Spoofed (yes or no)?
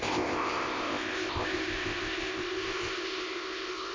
yes